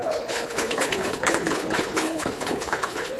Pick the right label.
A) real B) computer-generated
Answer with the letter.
B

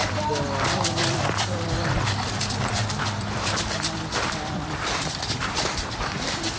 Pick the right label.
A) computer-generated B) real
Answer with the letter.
A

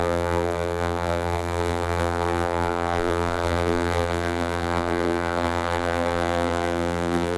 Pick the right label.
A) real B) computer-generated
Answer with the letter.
B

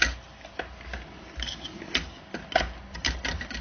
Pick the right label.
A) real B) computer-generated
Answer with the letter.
A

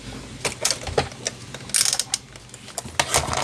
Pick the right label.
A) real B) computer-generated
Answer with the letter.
A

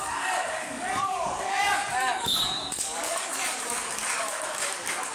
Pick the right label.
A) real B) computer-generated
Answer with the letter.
B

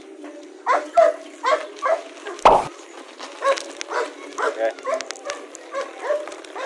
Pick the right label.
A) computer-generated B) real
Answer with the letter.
B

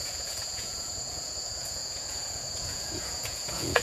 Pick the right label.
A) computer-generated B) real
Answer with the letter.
A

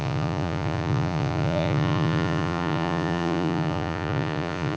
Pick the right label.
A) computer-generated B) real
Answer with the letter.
A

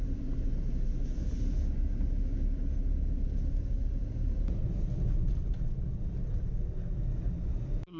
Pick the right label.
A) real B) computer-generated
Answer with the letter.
A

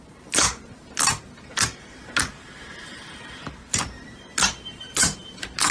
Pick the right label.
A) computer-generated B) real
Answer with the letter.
A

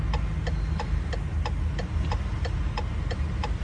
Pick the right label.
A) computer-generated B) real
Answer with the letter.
B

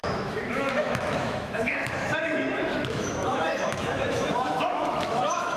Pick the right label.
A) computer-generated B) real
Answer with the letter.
A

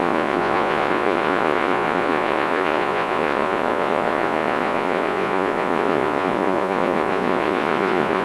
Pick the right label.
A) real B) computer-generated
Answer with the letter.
B